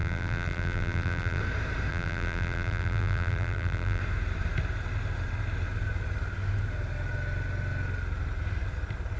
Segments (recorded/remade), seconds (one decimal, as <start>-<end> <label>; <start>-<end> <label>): 0.0-1.4 remade; 1.4-1.9 recorded; 1.9-4.0 remade; 4.0-9.2 recorded